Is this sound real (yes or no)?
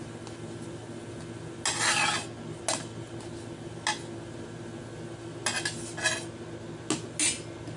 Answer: yes